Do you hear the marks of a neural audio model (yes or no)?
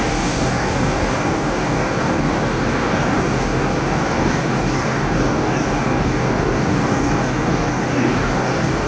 yes